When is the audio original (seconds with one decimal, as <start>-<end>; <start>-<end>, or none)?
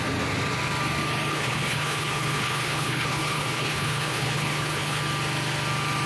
0.0-1.3; 5.0-6.1